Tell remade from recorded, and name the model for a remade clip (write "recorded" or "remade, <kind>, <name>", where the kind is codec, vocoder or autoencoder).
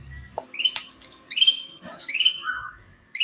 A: remade, codec, DAC